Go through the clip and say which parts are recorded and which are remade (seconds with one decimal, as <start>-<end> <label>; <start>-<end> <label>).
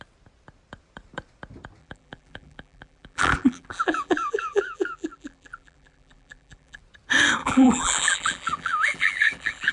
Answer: 0.0-1.8 recorded; 1.8-6.8 remade; 6.8-7.4 recorded; 7.4-9.7 remade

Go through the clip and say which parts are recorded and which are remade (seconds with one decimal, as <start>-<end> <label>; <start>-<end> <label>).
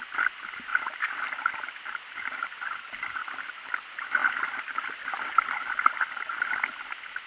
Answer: 0.0-7.3 recorded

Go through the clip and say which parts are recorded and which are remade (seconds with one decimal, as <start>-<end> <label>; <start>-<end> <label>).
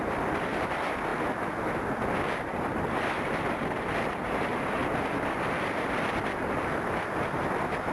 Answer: 0.0-7.9 recorded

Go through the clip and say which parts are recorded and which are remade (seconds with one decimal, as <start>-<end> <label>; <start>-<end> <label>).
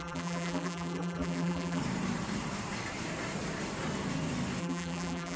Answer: 0.0-1.8 remade; 1.8-4.6 recorded; 4.6-5.4 remade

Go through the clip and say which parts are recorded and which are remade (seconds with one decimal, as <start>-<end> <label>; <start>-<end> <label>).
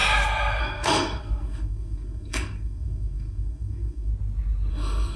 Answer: 0.0-0.6 recorded; 0.6-4.1 remade; 4.1-4.7 recorded; 4.7-5.2 remade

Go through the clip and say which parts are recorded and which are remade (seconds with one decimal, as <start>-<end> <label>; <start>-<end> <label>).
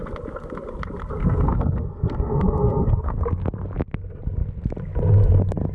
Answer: 0.0-1.2 recorded; 1.2-3.2 remade; 3.2-5.7 recorded